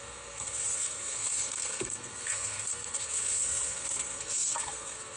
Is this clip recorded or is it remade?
remade